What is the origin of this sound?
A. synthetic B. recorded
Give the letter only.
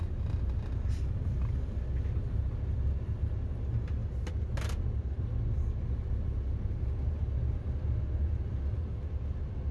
B